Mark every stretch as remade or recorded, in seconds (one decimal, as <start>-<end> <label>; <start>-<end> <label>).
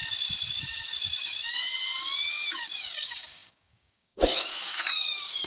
0.0-2.8 recorded; 2.8-5.5 remade